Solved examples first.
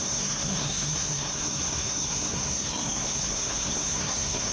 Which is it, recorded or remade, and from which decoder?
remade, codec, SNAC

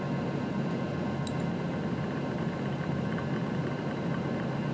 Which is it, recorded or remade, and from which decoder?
recorded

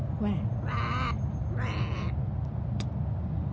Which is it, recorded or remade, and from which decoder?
recorded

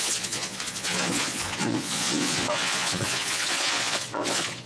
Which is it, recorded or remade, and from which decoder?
remade, vocoder, Vocos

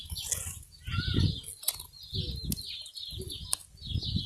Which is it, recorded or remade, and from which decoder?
recorded